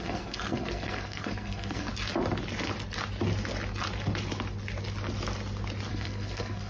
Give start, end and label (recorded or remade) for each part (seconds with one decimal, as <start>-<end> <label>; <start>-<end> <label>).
0.0-1.9 remade; 1.9-5.9 recorded; 5.9-6.7 remade